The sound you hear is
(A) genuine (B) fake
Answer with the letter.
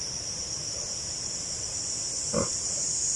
A